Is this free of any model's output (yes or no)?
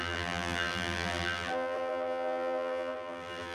no